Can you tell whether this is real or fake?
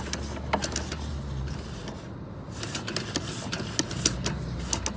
real